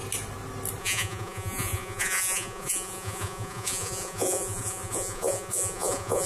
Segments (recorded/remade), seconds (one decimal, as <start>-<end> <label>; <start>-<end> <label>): 0.0-0.8 recorded; 0.8-6.3 remade